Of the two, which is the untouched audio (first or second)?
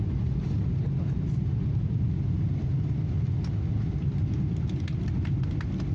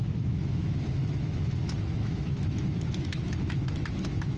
first